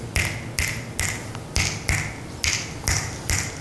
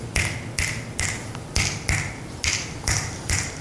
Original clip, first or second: first